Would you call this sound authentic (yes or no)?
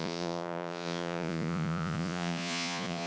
no